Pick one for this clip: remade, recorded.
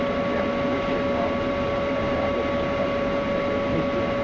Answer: recorded